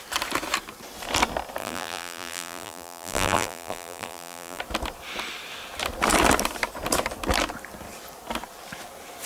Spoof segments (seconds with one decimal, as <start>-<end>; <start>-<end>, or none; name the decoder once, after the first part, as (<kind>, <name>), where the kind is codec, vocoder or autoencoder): 1.6-4.6 (vocoder, BigVGAN v2)